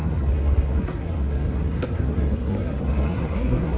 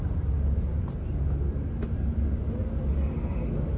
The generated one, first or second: first